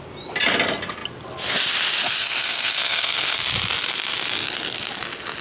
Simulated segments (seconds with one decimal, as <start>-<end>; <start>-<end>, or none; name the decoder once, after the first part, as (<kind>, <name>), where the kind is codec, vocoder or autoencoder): 2.2-3.4 (codec, SNAC)